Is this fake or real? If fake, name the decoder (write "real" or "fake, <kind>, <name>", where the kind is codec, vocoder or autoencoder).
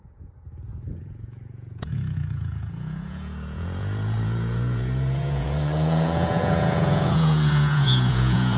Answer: fake, vocoder, Vocos